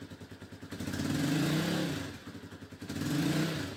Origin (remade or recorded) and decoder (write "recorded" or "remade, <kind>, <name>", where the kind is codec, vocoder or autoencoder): recorded